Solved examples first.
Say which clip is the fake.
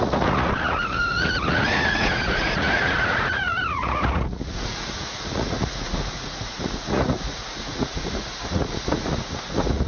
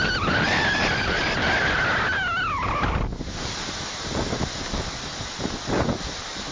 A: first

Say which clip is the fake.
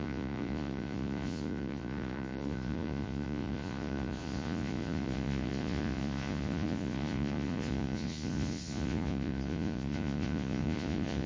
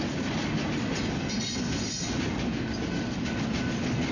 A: first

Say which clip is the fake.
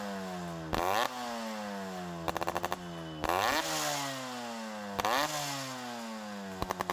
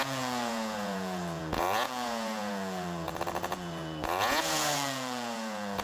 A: second